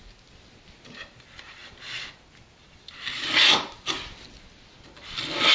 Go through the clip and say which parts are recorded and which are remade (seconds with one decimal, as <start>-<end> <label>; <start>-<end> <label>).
0.0-5.5 recorded